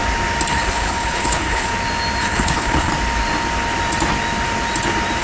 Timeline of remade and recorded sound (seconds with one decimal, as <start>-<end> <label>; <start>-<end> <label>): 0.0-0.5 recorded; 0.5-1.7 remade; 1.7-2.2 recorded; 2.2-2.9 remade; 2.9-5.2 recorded